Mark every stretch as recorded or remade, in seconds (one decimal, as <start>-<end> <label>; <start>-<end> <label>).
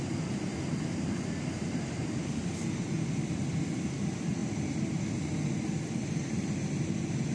0.0-7.3 recorded